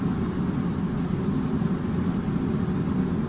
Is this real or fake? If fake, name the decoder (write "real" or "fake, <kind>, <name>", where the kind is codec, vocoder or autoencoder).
real